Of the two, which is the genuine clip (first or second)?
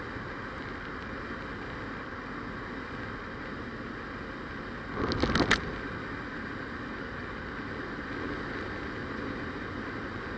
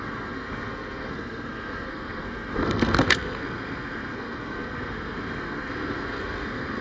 first